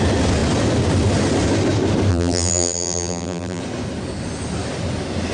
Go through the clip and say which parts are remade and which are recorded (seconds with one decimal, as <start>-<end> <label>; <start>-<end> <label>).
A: 0.0-2.1 recorded; 2.1-3.6 remade; 3.6-5.3 recorded